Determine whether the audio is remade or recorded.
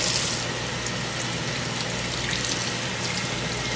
recorded